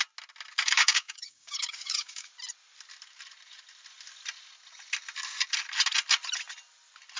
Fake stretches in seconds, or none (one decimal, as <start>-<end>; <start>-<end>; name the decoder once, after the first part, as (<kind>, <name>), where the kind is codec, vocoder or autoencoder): 0.6-2.3 (codec, DAC)